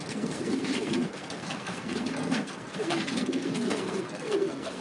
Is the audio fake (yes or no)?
yes